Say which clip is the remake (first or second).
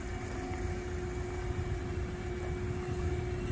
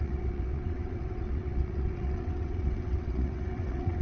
second